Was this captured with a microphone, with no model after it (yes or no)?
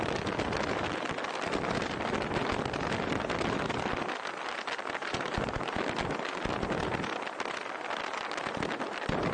yes